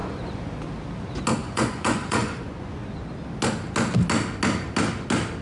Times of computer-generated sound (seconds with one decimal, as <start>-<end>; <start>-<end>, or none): 0.0-0.6; 1.4-2.8